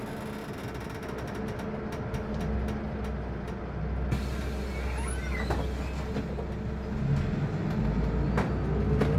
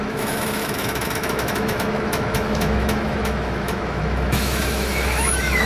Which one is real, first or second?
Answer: first